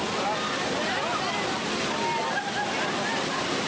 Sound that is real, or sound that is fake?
real